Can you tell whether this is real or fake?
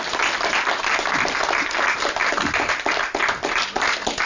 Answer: real